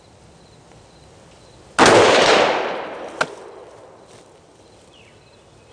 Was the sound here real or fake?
real